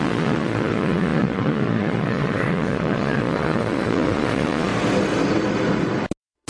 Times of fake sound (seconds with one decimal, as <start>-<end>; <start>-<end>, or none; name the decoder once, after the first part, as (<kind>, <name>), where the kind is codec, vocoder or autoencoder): 0.0-4.7 (vocoder, Vocos)